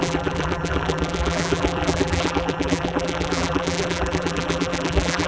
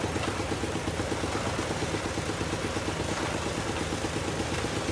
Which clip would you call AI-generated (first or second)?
first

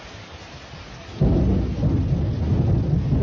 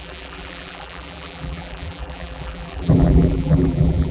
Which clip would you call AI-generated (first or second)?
second